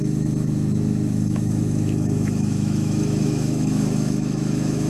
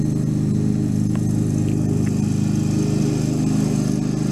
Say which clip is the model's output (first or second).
first